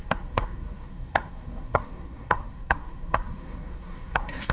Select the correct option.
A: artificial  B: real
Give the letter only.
A